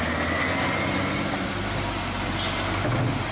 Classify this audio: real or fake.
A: real